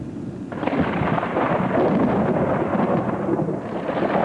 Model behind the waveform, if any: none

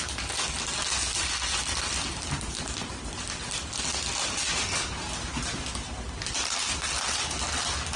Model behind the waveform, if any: none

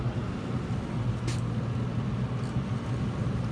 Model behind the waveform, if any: none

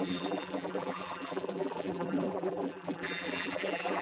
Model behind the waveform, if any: vocoder, BigVGAN v2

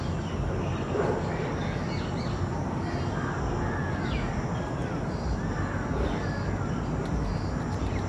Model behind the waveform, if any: none